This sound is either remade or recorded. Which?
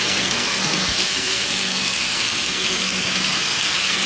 remade